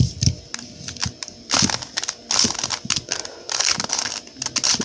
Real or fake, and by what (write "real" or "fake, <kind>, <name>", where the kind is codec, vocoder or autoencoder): real